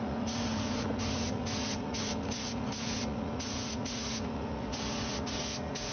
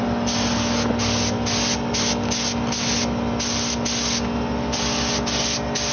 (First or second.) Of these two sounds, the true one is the second